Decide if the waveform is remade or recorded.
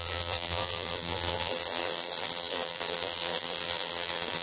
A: remade